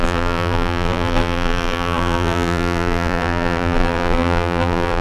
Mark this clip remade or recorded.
remade